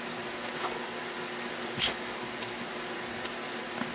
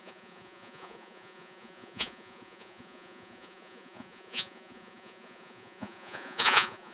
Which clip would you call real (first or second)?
first